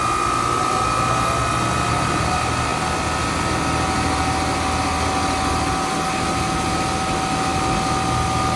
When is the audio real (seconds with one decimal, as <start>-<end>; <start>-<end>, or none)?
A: 0.0-8.6